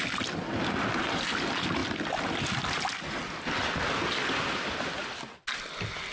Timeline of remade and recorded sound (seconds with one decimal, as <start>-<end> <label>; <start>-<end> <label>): 0.0-6.1 recorded